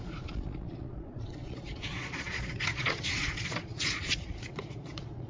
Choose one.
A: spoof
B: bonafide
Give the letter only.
A